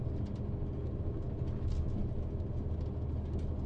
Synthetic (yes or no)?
no